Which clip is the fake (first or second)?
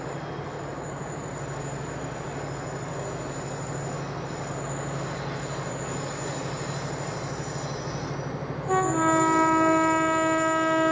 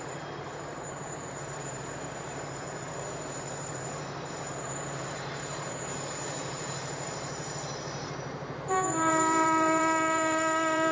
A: second